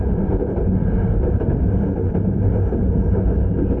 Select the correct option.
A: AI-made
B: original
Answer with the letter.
B